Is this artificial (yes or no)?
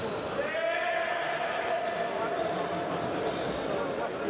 no